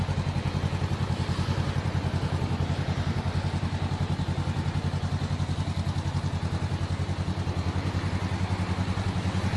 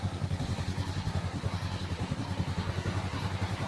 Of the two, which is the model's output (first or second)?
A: second